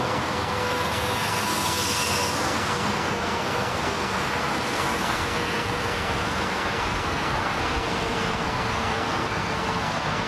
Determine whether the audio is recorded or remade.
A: remade